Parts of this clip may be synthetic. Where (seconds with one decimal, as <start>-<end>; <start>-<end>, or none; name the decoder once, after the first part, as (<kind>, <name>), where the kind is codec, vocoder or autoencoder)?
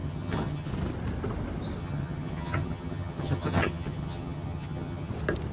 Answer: 0.0-0.7 (vocoder, HiFi-GAN); 1.8-5.1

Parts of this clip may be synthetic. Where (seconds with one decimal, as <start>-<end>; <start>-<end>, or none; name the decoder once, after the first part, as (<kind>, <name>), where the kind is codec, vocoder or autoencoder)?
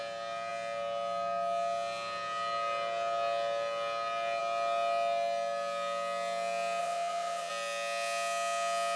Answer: 6.8-7.5 (vocoder, Vocos)